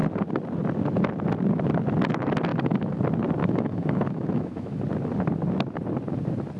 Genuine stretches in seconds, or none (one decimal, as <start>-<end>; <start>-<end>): 0.0-2.5; 3.0-3.4; 4.8-6.6

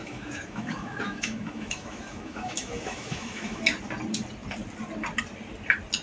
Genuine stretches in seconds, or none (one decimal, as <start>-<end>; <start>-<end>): 3.6-6.0

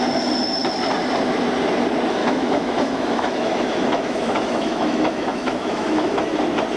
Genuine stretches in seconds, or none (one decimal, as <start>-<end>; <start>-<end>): 0.0-2.2; 6.3-6.8

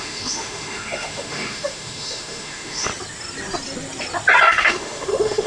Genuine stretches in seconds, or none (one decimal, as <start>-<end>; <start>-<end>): 2.9-4.5

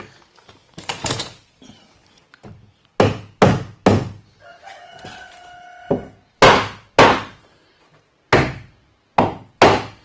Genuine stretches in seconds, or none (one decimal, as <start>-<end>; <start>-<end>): 0.0-10.0

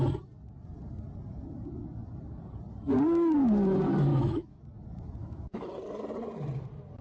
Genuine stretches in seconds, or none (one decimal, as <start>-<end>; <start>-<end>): 0.0-4.1; 4.6-5.2; 5.7-7.0